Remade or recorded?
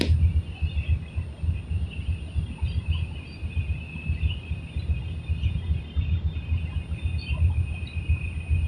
recorded